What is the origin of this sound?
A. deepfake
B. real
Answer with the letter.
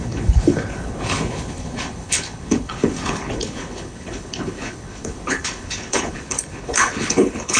A